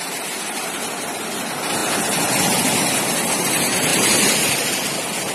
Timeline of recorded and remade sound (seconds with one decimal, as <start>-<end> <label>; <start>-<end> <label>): 0.0-5.3 recorded